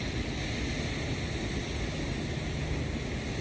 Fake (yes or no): no